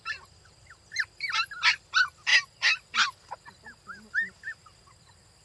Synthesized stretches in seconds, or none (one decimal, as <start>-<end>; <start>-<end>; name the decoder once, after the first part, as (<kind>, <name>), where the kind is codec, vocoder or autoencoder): none